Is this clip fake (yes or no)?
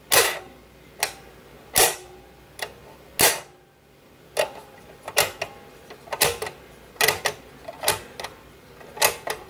no